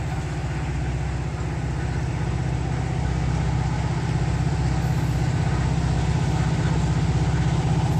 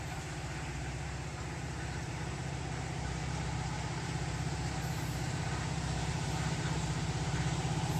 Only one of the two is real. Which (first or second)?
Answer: first